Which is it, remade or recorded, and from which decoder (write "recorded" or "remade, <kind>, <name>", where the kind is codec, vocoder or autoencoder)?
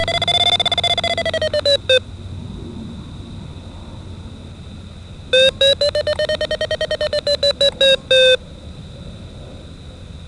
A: recorded